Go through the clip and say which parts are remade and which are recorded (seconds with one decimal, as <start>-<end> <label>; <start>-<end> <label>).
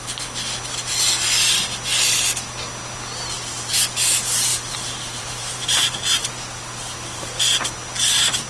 0.0-4.5 recorded; 4.5-7.4 remade; 7.4-8.5 recorded